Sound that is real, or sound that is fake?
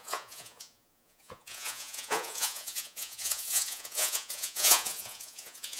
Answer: fake